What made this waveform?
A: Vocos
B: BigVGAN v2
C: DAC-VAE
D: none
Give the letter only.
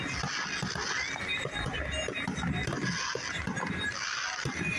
D